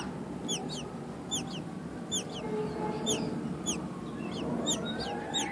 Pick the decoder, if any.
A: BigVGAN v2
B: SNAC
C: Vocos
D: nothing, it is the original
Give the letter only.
D